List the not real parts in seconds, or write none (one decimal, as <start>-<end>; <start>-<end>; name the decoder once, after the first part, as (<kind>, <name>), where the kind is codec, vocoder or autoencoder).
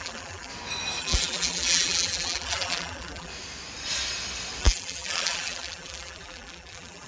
0.0-0.5 (vocoder, BigVGAN v2); 1.0-3.3; 4.6-7.1